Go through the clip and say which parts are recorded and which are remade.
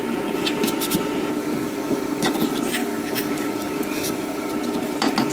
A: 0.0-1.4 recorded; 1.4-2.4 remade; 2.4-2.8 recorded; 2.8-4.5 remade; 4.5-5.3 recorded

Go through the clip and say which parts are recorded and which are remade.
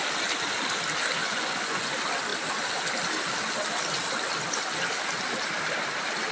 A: 0.0-1.2 recorded; 1.2-1.9 remade; 1.9-6.3 recorded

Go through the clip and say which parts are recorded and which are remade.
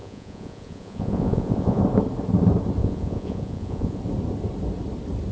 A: 0.0-1.8 remade; 1.8-2.8 recorded; 2.8-4.0 remade; 4.0-5.3 recorded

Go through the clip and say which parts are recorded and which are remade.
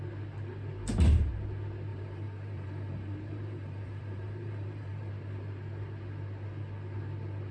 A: 0.0-1.9 recorded; 1.9-5.1 remade; 5.1-7.5 recorded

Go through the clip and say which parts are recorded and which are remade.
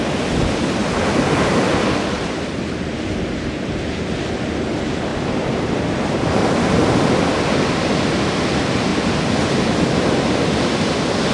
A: 0.0-11.3 recorded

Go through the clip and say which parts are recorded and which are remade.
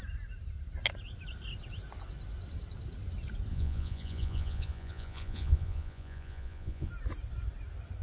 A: 0.0-3.5 recorded; 3.5-6.9 remade; 6.9-8.0 recorded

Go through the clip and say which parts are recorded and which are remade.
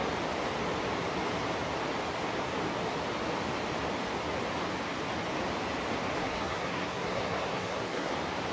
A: 0.0-6.2 recorded; 6.2-8.1 remade; 8.1-8.5 recorded